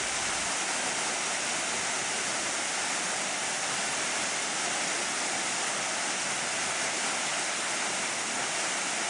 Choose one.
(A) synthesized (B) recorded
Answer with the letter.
B